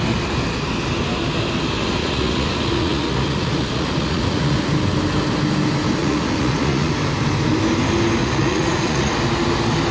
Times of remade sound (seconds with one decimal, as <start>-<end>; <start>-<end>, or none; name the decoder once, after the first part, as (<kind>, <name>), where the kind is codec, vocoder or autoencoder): 2.0-4.7 (vocoder, Vocos); 6.0-6.9; 8.2-9.1